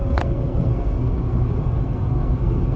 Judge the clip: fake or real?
fake